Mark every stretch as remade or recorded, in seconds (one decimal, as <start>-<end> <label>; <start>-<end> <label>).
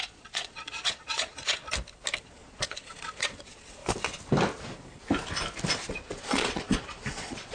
0.0-1.6 remade; 1.6-2.2 recorded; 2.2-3.8 remade; 3.8-5.9 recorded; 5.9-7.5 remade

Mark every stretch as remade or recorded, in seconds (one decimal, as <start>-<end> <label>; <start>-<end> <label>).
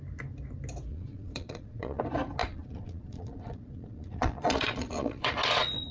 0.0-0.9 recorded; 0.9-2.0 remade; 2.0-2.4 recorded; 2.4-5.9 remade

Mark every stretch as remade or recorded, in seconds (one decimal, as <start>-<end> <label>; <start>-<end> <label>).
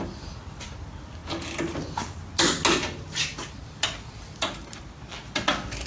0.0-5.9 recorded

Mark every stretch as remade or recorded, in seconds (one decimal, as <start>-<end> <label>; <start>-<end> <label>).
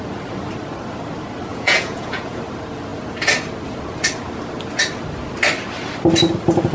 0.0-1.5 recorded; 1.5-2.4 remade; 2.4-6.7 recorded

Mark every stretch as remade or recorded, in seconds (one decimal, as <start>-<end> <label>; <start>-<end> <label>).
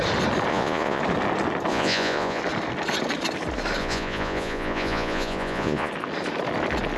0.0-0.5 recorded; 0.5-1.0 remade; 1.0-1.7 recorded; 1.7-2.4 remade; 2.4-3.8 recorded; 3.8-5.9 remade; 5.9-7.0 recorded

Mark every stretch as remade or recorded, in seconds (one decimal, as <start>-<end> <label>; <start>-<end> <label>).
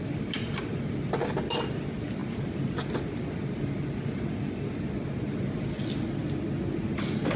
0.0-7.4 recorded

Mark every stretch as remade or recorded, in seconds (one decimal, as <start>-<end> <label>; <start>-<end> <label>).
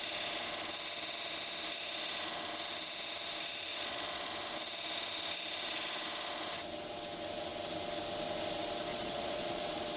0.0-3.7 recorded; 3.7-4.3 remade; 4.3-8.9 recorded; 8.9-9.6 remade; 9.6-10.0 recorded